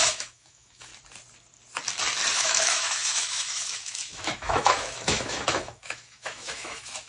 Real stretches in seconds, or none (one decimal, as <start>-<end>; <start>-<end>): 0.9-2.3